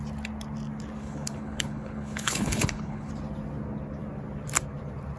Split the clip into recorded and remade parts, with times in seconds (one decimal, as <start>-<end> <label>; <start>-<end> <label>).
0.0-1.0 recorded; 1.0-3.1 remade; 3.1-5.2 recorded